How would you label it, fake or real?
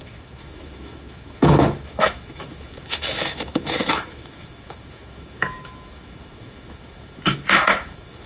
fake